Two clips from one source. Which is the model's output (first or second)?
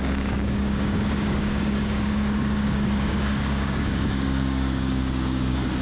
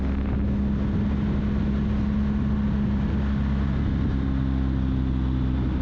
first